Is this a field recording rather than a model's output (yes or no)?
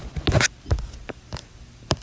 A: yes